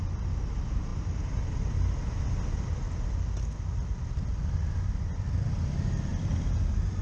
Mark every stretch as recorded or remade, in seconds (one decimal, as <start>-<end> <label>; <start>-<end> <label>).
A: 0.0-7.0 recorded